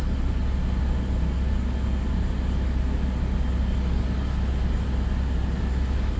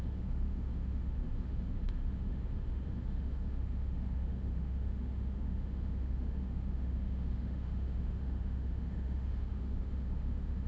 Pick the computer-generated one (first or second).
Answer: second